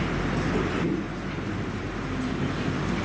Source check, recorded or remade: recorded